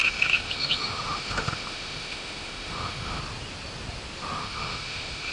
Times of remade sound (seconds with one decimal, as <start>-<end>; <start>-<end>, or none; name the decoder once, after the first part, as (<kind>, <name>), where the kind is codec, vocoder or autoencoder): 0.0-3.2 (autoencoder, DAC-VAE); 4.4-5.3